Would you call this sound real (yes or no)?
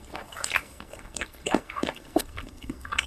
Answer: no